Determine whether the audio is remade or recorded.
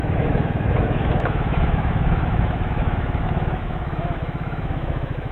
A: remade